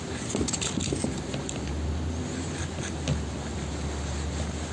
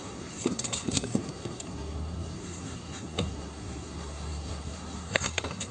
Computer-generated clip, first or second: second